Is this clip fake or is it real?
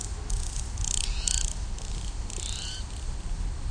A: real